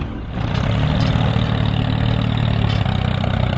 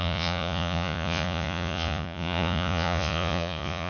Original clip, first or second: first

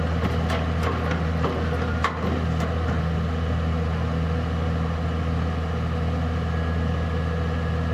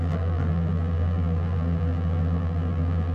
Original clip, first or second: first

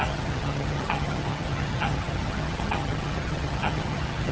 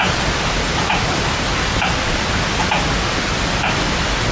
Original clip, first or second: second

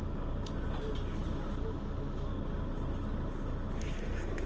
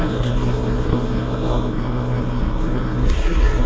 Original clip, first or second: first